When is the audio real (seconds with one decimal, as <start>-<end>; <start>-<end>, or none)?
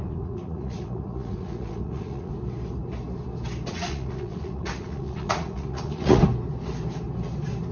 2.3-3.7; 6.2-7.7